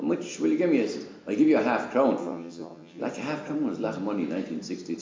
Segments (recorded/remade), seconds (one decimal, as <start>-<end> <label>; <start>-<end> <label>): 0.0-2.2 recorded; 2.2-3.0 remade; 3.0-5.0 recorded